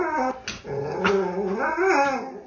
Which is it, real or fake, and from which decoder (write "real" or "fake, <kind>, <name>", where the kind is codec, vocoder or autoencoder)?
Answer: real